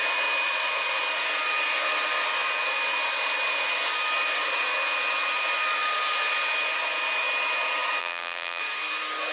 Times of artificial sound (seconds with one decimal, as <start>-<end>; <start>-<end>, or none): 8.0-8.6